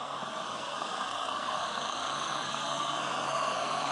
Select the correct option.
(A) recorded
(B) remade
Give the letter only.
B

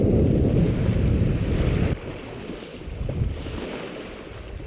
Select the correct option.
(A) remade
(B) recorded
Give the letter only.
B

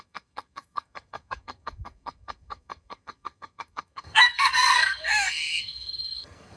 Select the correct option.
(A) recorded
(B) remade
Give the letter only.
B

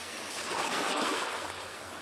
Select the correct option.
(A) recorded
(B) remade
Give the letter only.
B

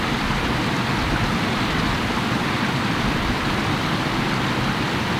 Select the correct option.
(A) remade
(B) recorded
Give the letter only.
B